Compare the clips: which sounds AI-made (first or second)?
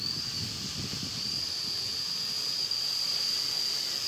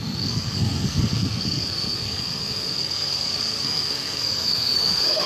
second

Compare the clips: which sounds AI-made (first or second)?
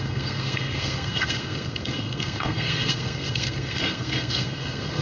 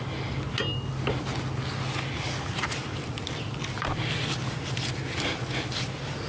first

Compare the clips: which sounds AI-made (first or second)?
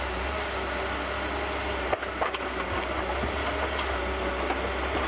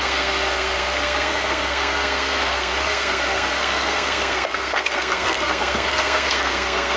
second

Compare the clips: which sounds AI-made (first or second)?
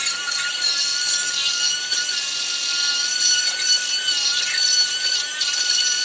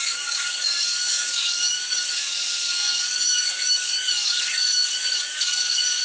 second